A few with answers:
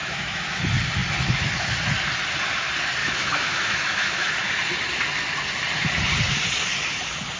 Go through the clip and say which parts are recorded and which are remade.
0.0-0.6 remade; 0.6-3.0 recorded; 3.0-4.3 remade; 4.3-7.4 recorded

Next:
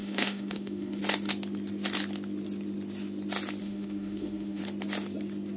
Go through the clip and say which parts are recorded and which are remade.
0.0-1.0 remade; 1.0-3.6 recorded; 3.6-4.6 remade; 4.6-5.6 recorded

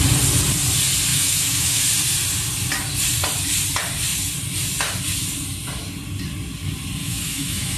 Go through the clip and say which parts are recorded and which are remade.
0.0-1.1 recorded; 1.1-1.8 remade; 1.8-7.0 recorded; 7.0-7.8 remade

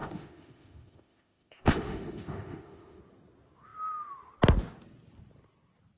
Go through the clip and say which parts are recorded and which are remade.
0.0-3.0 remade; 3.0-6.0 recorded

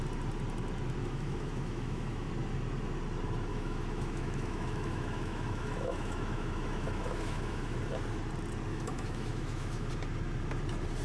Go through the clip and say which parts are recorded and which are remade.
0.0-1.0 recorded; 1.0-2.3 remade; 2.3-3.5 recorded; 3.5-7.8 remade; 7.8-8.7 recorded; 8.7-9.9 remade; 9.9-11.0 recorded

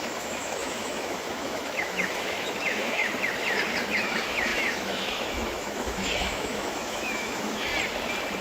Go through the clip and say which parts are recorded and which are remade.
0.0-3.0 remade; 3.0-4.0 recorded; 4.0-7.7 remade; 7.7-8.4 recorded